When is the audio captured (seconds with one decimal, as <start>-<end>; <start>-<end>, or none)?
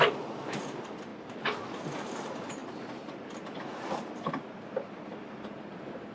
0.0-6.1